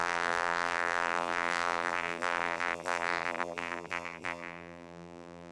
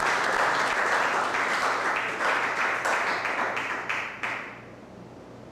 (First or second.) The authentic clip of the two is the second